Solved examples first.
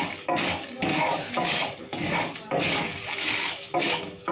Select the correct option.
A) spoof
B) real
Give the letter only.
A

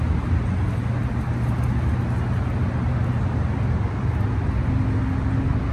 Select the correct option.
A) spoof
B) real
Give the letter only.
B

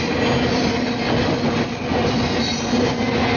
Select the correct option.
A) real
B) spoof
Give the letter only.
A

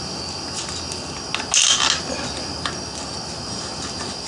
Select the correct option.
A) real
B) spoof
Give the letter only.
A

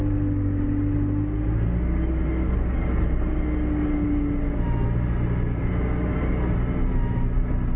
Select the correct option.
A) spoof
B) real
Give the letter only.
B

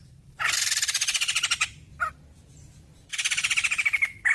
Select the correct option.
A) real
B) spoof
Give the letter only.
B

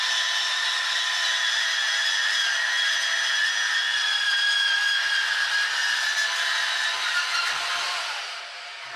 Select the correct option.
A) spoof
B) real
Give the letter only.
B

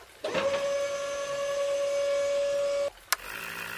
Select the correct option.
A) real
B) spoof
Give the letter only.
A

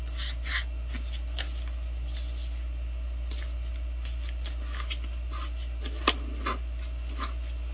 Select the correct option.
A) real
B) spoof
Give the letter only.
A